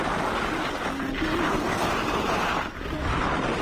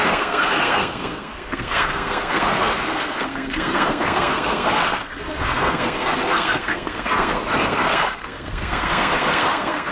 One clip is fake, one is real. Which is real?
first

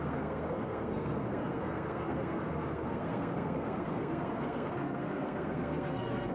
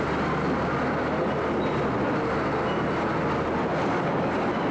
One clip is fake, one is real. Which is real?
second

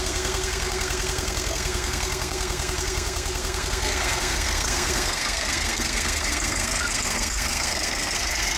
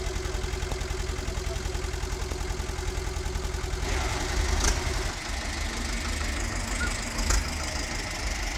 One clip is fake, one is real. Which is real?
second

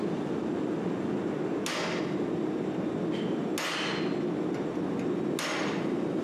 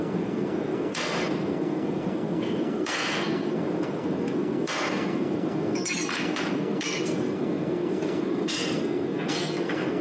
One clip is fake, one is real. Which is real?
first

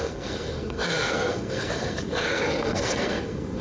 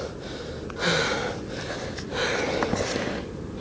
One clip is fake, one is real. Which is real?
second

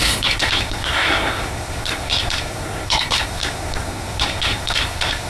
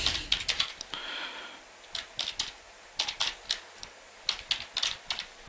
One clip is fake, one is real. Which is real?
second